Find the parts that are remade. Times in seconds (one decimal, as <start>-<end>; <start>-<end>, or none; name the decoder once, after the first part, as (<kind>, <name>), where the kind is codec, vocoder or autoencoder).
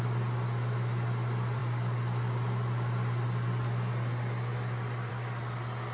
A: none